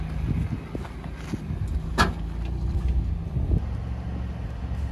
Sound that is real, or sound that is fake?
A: real